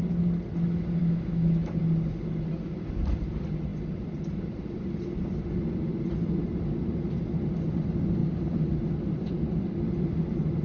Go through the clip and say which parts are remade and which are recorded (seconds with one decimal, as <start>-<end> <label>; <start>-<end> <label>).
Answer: 0.0-1.0 recorded; 1.0-1.8 remade; 1.8-10.6 recorded